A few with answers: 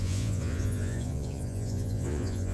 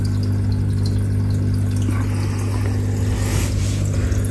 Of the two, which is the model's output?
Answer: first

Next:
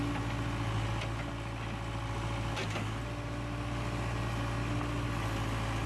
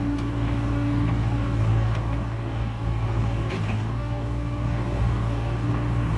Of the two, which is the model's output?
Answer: second